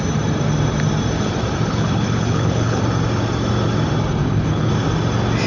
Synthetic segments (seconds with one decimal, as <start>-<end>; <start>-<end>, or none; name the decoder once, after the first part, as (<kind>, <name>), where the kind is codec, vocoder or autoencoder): 1.7-2.8 (codec, HILCodec); 4.2-4.7